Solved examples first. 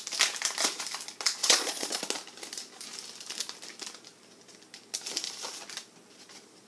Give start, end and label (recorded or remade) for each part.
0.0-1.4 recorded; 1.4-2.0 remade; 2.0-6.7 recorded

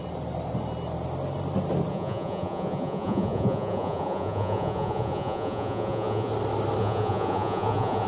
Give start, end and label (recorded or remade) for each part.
0.0-1.9 recorded; 1.9-6.3 remade; 6.3-6.8 recorded; 6.8-8.1 remade

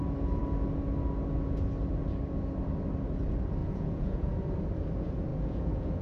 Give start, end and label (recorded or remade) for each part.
0.0-3.6 recorded; 3.6-4.3 remade; 4.3-5.3 recorded; 5.3-6.0 remade